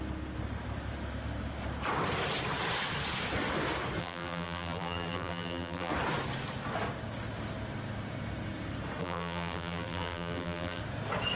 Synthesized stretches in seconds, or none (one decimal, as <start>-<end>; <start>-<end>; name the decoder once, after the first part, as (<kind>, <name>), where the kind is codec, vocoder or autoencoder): 4.0-5.9 (vocoder, BigVGAN v2); 9.0-10.8